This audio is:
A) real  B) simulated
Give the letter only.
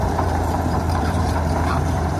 B